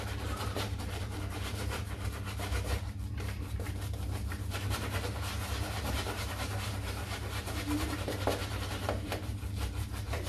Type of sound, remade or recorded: remade